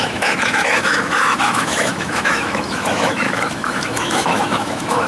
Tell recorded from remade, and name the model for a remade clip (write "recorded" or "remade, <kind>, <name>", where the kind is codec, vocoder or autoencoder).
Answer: remade, autoencoder, DAC-VAE